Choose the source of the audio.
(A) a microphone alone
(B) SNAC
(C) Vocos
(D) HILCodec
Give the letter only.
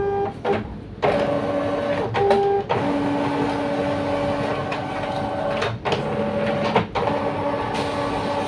A